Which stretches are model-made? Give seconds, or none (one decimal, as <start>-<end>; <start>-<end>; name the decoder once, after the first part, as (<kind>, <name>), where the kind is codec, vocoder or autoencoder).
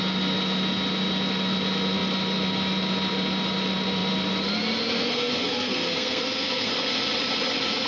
5.1-6.7 (codec, SNAC)